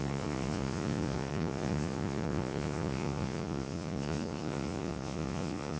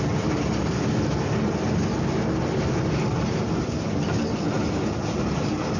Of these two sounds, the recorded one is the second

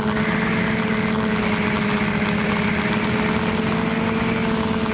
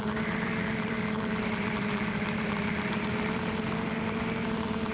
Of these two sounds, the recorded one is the first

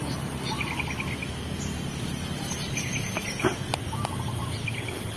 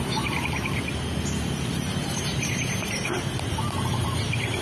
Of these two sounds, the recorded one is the first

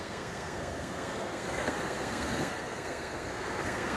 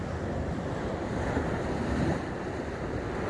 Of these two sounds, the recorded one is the second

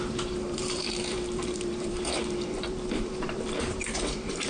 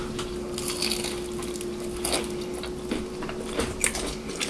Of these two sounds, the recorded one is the second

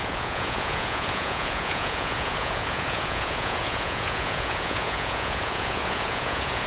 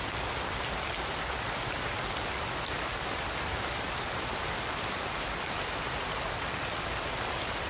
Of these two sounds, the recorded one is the second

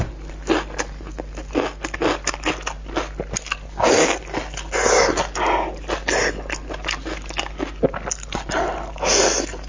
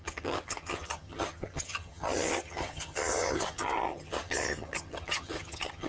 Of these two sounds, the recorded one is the first